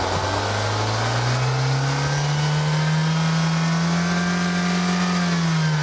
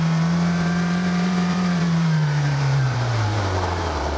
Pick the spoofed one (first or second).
second